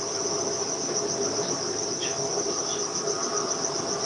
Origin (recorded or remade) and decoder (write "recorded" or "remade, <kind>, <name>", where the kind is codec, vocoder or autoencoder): recorded